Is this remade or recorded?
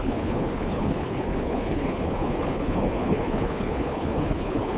remade